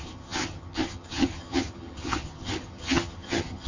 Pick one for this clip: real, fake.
fake